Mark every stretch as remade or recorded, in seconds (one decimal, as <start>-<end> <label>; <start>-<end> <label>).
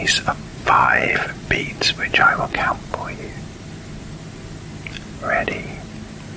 0.0-0.5 recorded; 0.5-3.4 remade; 3.4-6.4 recorded